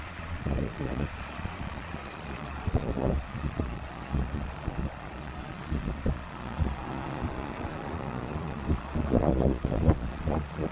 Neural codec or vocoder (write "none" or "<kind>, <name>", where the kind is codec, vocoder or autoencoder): vocoder, Vocos